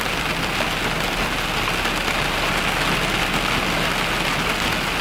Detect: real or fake real